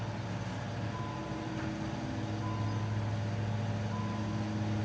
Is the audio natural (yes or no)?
yes